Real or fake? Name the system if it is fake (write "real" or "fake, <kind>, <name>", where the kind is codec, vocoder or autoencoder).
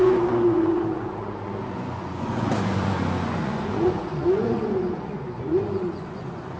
fake, vocoder, Vocos